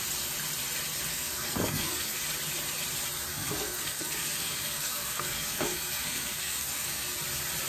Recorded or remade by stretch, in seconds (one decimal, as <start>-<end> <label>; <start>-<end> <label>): 0.0-1.1 recorded; 1.1-2.2 remade; 2.2-3.3 recorded; 3.3-7.2 remade; 7.2-7.7 recorded